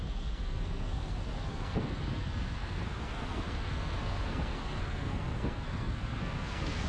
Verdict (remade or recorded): remade